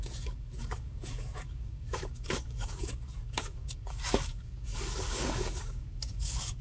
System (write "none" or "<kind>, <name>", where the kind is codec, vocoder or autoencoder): codec, DAC